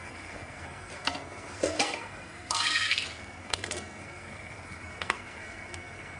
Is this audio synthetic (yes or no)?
yes